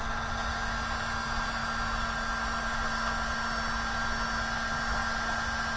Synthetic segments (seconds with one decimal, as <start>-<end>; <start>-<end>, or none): none